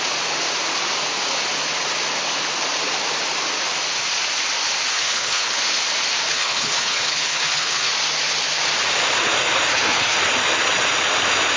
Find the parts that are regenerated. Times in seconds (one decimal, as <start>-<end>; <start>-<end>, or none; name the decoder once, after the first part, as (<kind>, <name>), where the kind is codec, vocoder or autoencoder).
4.9-5.6 (codec, HILCodec); 6.3-7.9; 9.7-10.2